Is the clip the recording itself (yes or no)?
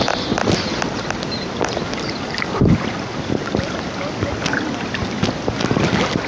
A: yes